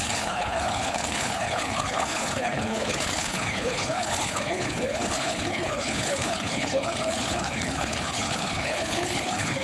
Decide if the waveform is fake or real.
fake